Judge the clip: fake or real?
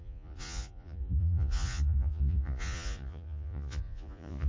fake